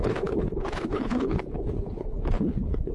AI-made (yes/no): yes